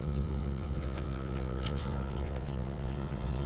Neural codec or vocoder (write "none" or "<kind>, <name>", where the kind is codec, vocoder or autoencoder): vocoder, WaveNeXt